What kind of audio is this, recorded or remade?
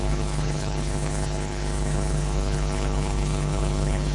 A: remade